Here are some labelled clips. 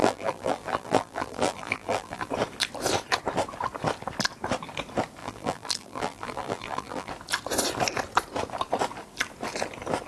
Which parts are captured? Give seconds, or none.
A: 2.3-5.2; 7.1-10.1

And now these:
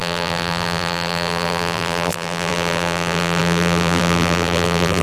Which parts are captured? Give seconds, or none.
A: none